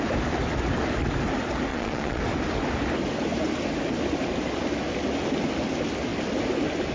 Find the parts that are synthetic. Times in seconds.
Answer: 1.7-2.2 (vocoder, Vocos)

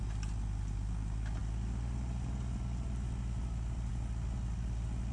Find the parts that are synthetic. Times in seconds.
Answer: none

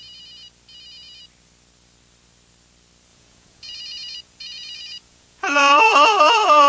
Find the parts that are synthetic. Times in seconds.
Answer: 3.1-6.7 (vocoder, Vocos)

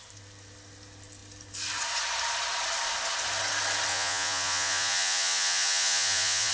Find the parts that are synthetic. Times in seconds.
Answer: 3.9-6.5 (vocoder, Vocos)

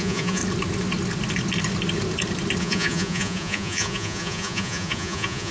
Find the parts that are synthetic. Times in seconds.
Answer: 0.0-0.4 (vocoder, Vocos); 2.6-5.5

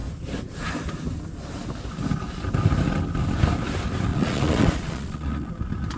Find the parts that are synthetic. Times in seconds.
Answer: 4.1-5.5 (vocoder, Vocos)